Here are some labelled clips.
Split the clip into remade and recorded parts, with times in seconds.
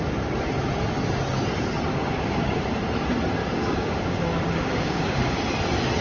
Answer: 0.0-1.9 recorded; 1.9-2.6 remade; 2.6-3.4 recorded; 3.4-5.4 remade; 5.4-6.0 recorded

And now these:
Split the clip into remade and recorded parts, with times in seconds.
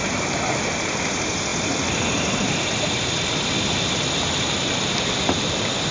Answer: 0.0-1.5 recorded; 1.5-3.2 remade; 3.2-5.9 recorded